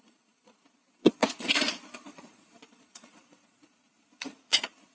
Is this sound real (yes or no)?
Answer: no